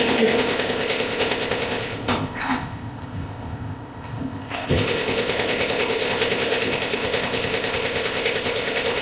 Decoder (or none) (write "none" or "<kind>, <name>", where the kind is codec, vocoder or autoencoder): codec, ZipCodec